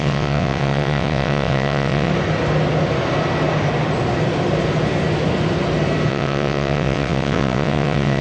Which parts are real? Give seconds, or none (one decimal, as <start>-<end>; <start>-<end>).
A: 2.1-6.1